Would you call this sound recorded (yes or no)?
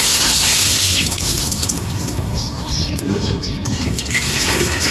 no